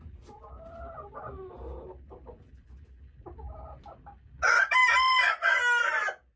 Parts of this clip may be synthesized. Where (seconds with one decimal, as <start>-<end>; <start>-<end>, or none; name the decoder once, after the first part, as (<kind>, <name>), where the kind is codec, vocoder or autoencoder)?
none